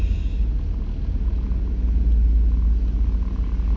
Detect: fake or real real